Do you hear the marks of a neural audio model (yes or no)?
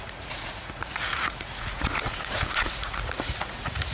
yes